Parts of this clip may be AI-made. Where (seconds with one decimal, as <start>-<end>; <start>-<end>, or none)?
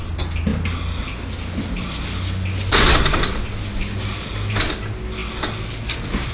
none